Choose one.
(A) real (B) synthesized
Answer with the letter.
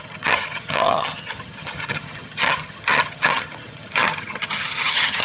B